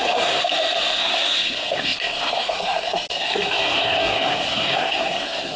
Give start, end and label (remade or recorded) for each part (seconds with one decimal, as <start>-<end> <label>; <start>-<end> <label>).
0.0-0.4 remade; 0.4-1.0 recorded; 1.0-5.6 remade